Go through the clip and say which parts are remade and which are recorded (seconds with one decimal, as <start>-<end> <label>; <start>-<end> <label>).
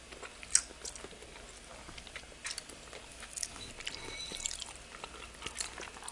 0.0-3.1 recorded; 3.1-3.7 remade; 3.7-6.1 recorded